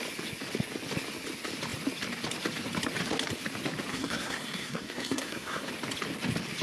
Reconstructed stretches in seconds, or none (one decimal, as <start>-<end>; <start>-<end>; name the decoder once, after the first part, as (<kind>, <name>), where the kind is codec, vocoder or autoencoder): 3.9-5.7 (codec, SNAC)